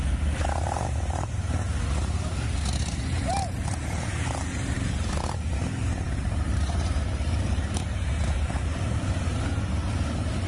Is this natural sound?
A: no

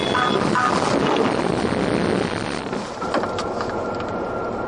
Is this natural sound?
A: yes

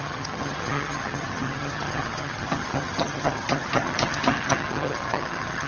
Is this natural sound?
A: no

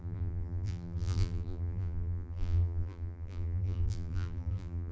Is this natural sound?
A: no